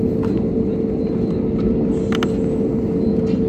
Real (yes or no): yes